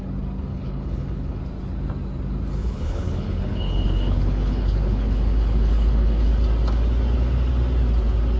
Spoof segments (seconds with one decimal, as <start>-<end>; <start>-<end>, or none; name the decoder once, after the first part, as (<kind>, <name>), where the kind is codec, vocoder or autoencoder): 0.5-1.4 (codec, HILCodec); 2.6-6.3